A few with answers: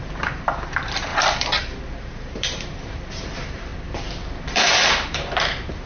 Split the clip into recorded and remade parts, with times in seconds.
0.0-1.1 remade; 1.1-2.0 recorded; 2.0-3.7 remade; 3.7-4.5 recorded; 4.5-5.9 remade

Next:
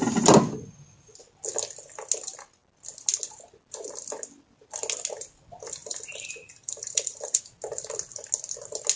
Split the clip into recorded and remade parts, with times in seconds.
0.0-5.8 recorded; 5.8-7.4 remade; 7.4-9.0 recorded

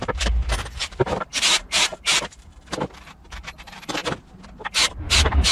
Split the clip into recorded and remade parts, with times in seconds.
0.0-4.0 remade; 4.0-5.1 recorded; 5.1-5.5 remade

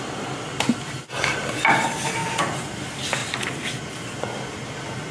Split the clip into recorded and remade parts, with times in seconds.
0.0-5.1 recorded